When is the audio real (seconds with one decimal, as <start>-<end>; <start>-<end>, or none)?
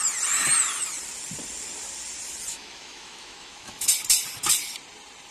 0.0-2.5; 3.9-5.3